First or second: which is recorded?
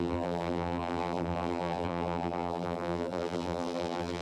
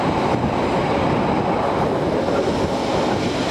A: second